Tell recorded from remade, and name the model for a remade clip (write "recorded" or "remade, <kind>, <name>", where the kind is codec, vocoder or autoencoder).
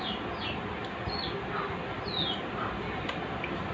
recorded